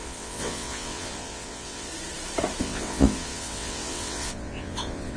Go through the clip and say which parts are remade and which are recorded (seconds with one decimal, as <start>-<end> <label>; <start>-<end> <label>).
0.0-1.9 remade; 1.9-2.6 recorded; 2.6-5.2 remade